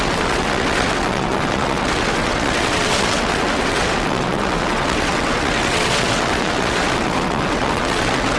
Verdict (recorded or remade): remade